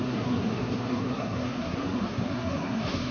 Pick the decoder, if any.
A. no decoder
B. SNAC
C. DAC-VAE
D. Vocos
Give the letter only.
B